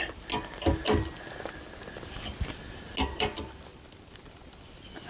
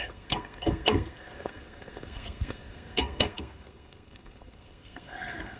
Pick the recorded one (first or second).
first